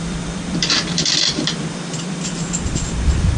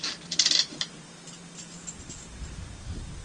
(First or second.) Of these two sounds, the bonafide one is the second